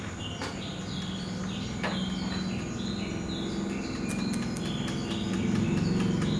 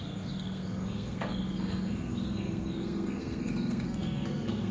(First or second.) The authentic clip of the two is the first